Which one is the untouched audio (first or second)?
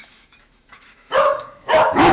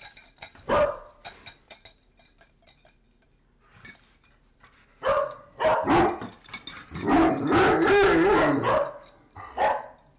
second